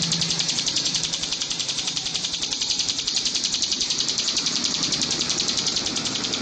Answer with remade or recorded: remade